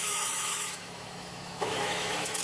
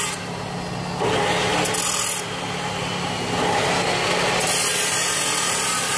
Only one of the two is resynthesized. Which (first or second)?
first